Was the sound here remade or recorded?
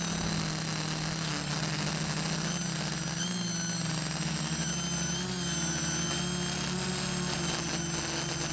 recorded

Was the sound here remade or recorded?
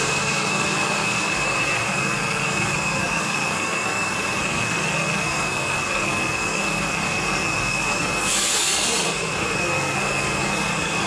remade